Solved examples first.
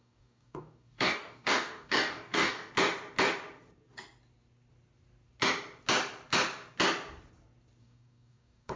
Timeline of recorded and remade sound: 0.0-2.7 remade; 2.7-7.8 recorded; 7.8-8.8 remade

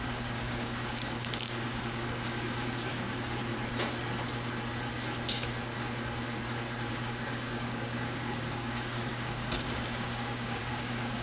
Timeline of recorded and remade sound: 0.0-3.4 remade; 3.4-6.9 recorded; 6.9-11.2 remade